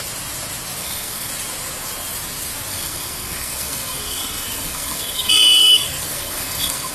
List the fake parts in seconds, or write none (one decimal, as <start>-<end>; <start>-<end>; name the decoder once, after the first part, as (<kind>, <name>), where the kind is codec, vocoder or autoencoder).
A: 0.8-1.3 (codec, SNAC); 2.7-6.9

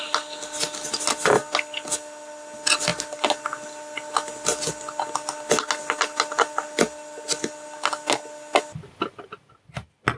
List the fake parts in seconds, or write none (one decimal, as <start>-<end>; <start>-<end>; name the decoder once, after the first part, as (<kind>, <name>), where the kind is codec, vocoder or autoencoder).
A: none

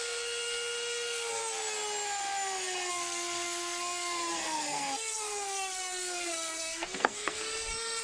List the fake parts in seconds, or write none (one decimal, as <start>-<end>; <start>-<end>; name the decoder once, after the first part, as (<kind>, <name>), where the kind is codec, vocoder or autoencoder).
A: 0.0-1.4 (codec, SNAC); 2.9-8.0

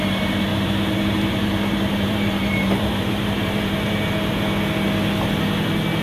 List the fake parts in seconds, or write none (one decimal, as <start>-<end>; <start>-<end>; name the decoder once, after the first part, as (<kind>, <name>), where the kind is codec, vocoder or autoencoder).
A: 0.5-4.0 (vocoder, BigVGAN v2)

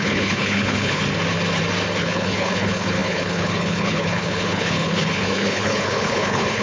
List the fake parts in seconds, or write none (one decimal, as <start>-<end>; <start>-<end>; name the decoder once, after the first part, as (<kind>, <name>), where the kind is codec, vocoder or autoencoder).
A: 0.0-1.0 (codec, HILCodec); 2.0-6.6

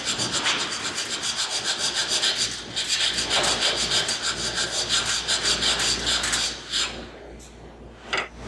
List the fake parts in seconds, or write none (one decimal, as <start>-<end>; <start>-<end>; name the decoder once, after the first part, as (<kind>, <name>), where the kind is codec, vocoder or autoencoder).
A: none

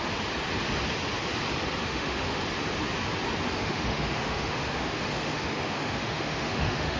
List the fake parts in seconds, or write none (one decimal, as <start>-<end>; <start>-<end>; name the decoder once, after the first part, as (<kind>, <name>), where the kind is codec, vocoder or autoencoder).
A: 1.8-2.4 (autoencoder, DAC-VAE); 3.6-7.0